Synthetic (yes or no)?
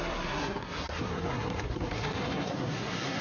yes